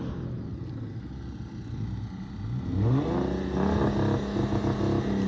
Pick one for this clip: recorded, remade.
recorded